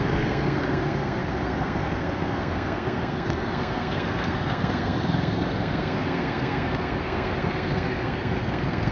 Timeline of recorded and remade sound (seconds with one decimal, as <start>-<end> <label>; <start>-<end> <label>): 0.0-8.9 remade